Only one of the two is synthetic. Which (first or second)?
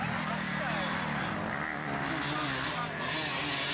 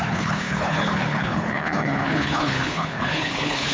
second